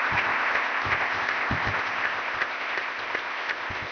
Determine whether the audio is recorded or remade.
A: remade